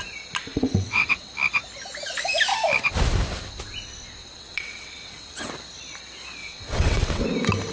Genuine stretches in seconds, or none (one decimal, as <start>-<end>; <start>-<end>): 0.0-0.5; 1.3-4.2; 5.5-6.4; 7.2-7.7